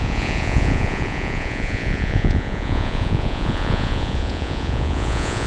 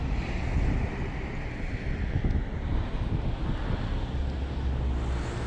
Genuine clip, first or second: second